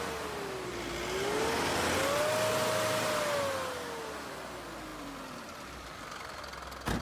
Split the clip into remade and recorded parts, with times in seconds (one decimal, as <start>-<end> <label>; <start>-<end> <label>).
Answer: 0.0-4.9 recorded; 4.9-6.4 remade; 6.4-7.0 recorded